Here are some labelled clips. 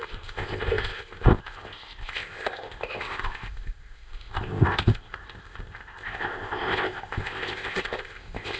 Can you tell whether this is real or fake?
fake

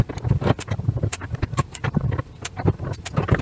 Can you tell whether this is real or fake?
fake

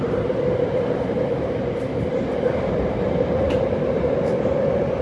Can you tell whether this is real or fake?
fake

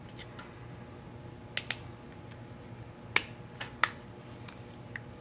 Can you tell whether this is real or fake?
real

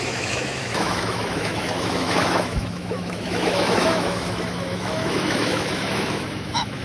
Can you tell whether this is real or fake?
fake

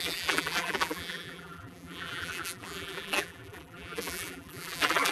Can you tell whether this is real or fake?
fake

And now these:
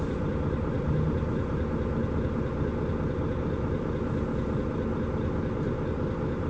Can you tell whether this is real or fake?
real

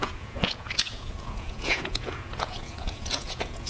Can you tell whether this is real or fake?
fake